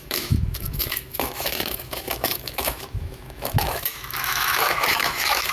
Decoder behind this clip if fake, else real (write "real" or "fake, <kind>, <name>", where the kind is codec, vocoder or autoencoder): fake, autoencoder, DAC-VAE